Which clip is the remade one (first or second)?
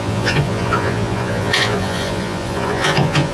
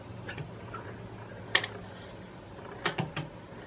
first